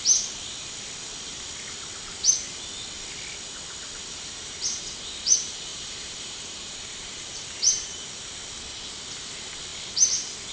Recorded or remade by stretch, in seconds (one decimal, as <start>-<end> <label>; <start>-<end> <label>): 0.0-5.7 recorded; 5.7-8.2 remade; 8.2-10.5 recorded